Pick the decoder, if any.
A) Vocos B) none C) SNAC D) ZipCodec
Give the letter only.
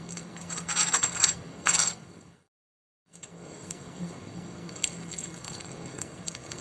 C